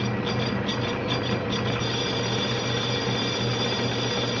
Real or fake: real